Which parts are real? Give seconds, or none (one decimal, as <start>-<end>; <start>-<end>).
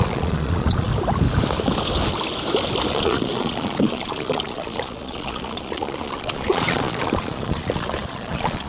0.9-2.9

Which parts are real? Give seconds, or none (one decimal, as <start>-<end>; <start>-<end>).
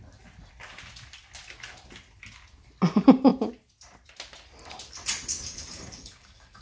0.0-5.3